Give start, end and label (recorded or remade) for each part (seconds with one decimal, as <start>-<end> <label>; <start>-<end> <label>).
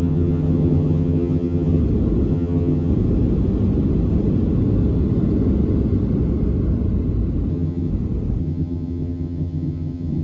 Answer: 0.0-1.8 remade; 1.8-2.3 recorded; 2.3-2.9 remade; 2.9-7.5 recorded; 7.5-7.9 remade; 7.9-8.4 recorded; 8.4-10.2 remade